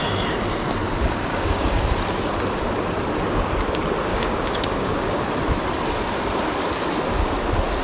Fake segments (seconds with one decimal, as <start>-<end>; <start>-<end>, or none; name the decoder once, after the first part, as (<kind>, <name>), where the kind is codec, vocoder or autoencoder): 1.3-1.8 (codec, DAC); 4.1-5.2